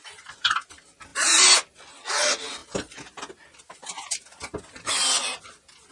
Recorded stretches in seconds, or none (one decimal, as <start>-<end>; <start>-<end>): 0.0-5.9